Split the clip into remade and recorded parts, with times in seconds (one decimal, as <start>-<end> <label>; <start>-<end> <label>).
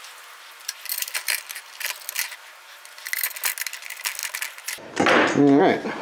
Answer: 0.0-6.0 recorded